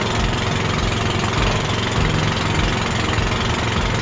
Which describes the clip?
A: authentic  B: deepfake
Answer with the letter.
A